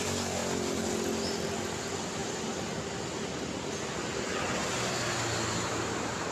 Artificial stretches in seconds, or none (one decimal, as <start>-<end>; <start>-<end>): none